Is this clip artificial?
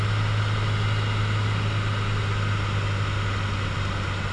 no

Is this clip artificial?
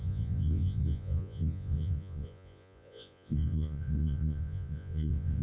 yes